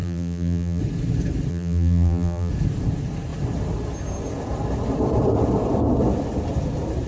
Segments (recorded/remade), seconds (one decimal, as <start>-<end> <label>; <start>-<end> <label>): 0.0-0.8 remade; 0.8-1.5 recorded; 1.5-2.5 remade; 2.5-7.1 recorded